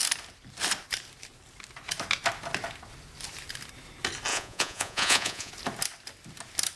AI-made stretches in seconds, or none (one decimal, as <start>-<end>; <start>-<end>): 4.3-5.5